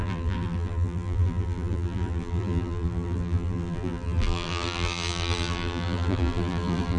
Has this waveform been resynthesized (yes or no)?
yes